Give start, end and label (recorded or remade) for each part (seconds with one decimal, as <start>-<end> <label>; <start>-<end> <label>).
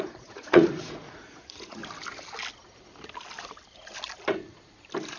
0.0-1.8 remade; 1.8-5.2 recorded